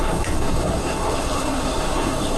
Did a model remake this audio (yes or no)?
yes